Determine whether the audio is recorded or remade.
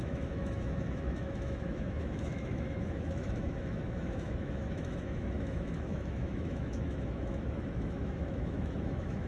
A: remade